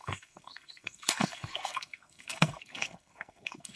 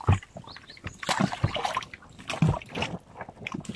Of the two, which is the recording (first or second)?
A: second